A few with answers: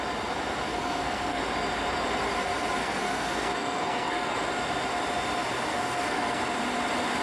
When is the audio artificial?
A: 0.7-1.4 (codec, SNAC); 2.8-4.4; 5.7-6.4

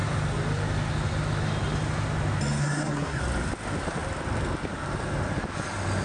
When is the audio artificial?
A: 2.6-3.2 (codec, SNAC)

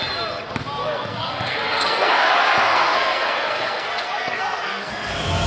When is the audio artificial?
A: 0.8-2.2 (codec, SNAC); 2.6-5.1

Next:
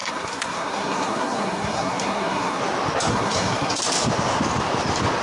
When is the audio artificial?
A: 0.0-2.6 (codec, SNAC); 3.1-3.8

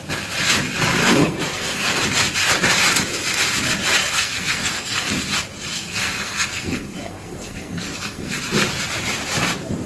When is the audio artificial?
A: 1.0-2.0 (codec, SNAC); 4.0-5.1; 5.7-8.4